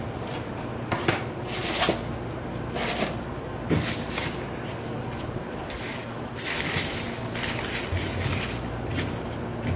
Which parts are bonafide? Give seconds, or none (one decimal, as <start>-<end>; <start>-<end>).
0.0-4.9; 6.3-9.8